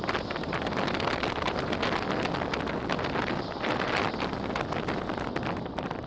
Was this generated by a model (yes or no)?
no